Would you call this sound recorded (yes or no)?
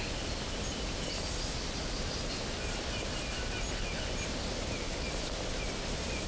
yes